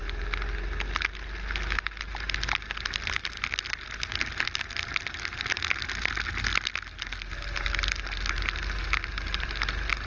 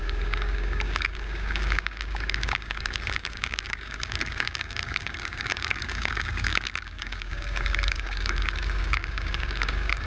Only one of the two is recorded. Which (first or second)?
first